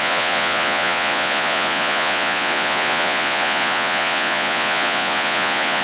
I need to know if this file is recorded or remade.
remade